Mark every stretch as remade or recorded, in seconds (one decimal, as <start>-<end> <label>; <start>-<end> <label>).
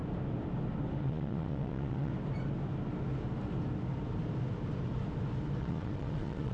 0.0-1.0 recorded; 1.0-2.1 remade; 2.1-5.6 recorded; 5.6-6.5 remade